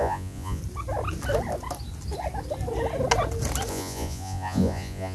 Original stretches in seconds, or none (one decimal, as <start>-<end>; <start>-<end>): 0.6-3.7